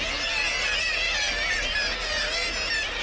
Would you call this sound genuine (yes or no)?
yes